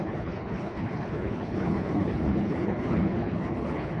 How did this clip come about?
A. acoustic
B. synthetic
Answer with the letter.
B